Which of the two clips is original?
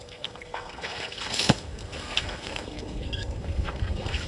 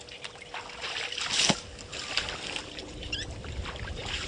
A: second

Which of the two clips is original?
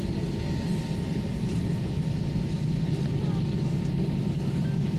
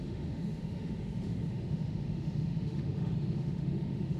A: first